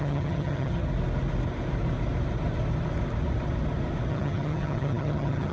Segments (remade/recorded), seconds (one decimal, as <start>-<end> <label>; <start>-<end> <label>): 0.0-0.8 remade; 0.8-4.1 recorded; 4.1-5.5 remade